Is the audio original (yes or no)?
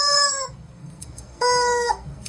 no